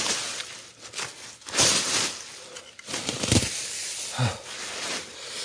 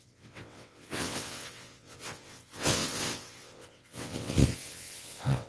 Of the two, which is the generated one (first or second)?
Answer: second